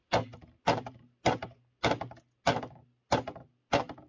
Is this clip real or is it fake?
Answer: real